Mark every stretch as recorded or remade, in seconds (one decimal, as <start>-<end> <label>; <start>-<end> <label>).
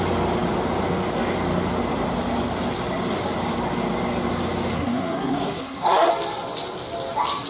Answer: 0.0-4.7 recorded; 4.7-6.1 remade; 6.1-7.5 recorded